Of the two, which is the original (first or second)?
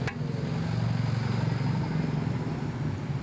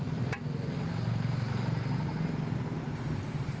first